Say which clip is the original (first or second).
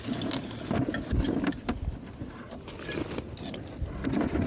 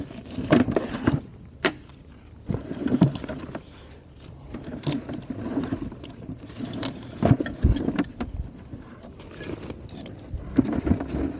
first